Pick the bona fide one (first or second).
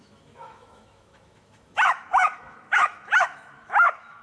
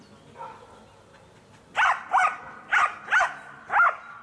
second